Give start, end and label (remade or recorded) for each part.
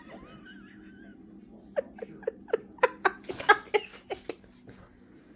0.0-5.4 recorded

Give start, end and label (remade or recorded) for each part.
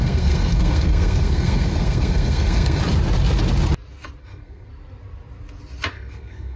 0.0-2.8 remade; 2.8-4.2 recorded; 4.2-4.7 remade; 4.7-5.9 recorded; 5.9-6.6 remade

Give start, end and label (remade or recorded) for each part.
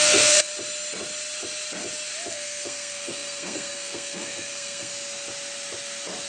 0.0-0.5 remade; 0.5-2.3 recorded; 2.3-4.9 remade; 4.9-6.3 recorded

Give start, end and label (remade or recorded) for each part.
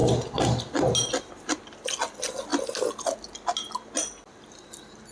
0.0-5.1 recorded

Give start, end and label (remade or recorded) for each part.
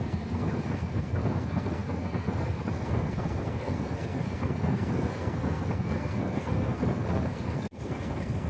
0.0-8.5 remade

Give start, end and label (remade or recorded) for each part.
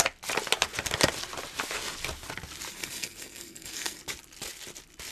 0.0-2.7 recorded; 2.7-4.0 remade; 4.0-5.1 recorded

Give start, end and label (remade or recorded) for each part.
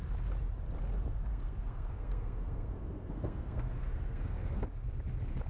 0.0-1.3 recorded; 1.3-4.6 remade; 4.6-5.5 recorded